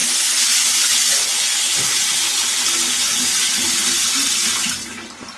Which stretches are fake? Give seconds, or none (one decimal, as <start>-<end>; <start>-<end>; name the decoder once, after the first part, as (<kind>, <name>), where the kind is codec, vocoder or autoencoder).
none